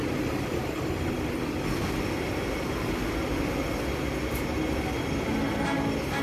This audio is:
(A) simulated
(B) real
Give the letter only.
B